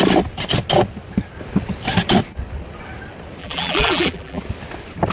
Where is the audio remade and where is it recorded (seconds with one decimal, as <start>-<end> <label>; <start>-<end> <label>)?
0.0-3.4 recorded; 3.4-4.4 remade; 4.4-5.1 recorded